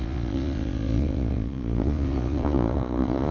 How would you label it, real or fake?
fake